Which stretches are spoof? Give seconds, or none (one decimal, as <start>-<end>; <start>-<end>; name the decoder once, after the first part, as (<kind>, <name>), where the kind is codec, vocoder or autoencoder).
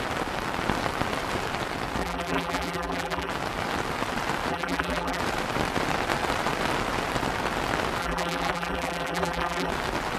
2.0-3.3 (vocoder, BigVGAN v2); 4.5-5.2; 8.0-9.7